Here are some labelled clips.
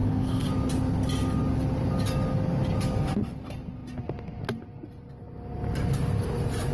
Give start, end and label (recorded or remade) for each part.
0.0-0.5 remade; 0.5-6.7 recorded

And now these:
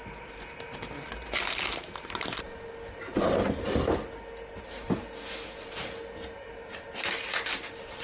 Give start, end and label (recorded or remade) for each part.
0.0-8.0 recorded